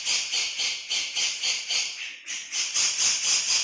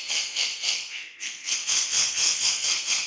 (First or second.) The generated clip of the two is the second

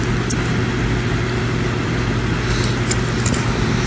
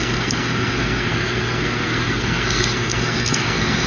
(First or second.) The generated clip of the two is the second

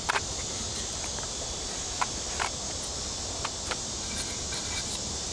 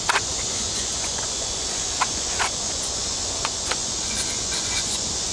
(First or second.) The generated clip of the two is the second